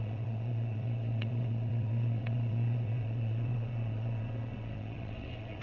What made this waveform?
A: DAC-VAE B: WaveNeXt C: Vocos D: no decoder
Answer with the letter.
B